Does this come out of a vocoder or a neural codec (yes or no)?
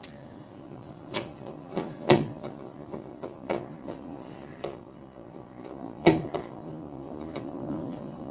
yes